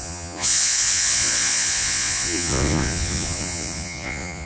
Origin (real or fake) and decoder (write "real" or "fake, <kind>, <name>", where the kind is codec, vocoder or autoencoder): fake, vocoder, Vocos